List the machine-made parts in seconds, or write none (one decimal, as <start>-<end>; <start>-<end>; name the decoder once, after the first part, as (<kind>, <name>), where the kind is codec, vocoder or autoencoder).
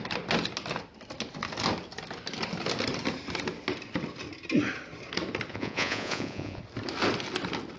5.5-6.6 (vocoder, Vocos)